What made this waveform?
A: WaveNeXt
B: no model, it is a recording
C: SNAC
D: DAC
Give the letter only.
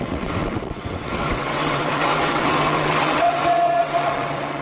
A